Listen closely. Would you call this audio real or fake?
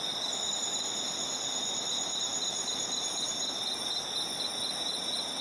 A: real